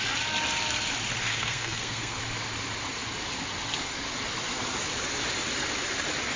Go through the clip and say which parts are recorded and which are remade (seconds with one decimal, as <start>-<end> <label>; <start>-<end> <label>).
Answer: 0.0-1.2 recorded; 1.2-2.2 remade; 2.2-6.4 recorded